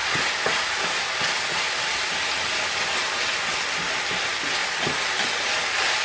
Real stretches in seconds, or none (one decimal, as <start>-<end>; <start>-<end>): 0.0-6.0